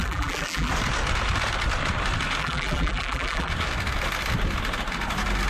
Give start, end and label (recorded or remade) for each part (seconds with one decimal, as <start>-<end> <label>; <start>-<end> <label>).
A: 0.0-0.7 remade; 0.7-2.4 recorded; 2.4-3.5 remade; 3.5-5.5 recorded